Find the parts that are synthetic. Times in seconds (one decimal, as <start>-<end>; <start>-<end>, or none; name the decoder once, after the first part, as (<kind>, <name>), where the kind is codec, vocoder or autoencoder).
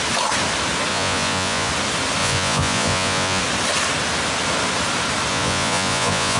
0.9-1.7 (vocoder, Vocos); 2.2-3.4; 5.3-6.4